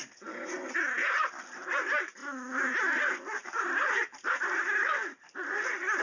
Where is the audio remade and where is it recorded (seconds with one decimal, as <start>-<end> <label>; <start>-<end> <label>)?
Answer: 0.0-0.6 remade; 0.6-3.4 recorded; 3.4-6.0 remade